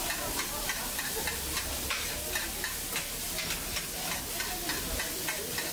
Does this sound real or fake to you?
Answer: real